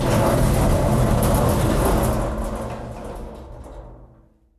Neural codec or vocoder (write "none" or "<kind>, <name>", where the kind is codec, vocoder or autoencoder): none